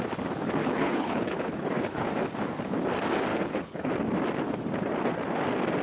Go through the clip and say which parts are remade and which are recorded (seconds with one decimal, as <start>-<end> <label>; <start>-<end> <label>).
0.0-0.6 recorded; 0.6-2.1 remade; 2.1-3.3 recorded; 3.3-3.9 remade; 3.9-5.8 recorded